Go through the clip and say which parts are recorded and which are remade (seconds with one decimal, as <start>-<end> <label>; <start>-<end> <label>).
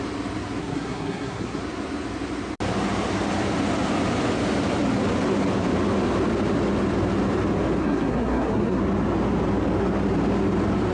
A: 0.0-0.6 recorded; 0.6-1.6 remade; 1.6-7.8 recorded; 7.8-8.8 remade; 8.8-10.9 recorded